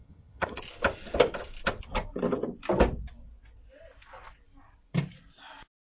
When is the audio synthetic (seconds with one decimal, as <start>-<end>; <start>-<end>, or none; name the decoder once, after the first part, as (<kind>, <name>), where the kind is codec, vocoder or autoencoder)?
0.0-0.6 (vocoder, HiFi-GAN)